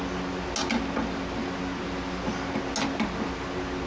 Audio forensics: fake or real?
real